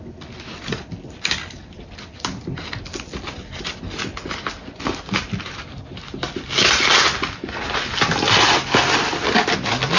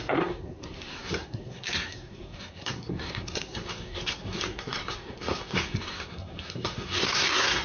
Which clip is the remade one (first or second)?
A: second